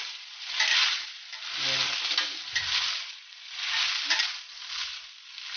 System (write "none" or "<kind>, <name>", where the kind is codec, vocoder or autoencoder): none